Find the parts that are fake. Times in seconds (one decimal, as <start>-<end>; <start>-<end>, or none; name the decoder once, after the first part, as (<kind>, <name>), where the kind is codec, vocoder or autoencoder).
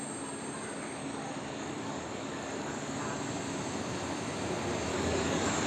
1.0-3.0 (codec, DAC); 4.9-5.7